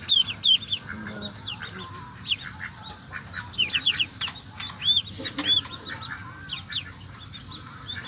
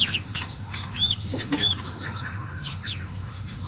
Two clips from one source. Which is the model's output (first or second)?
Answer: second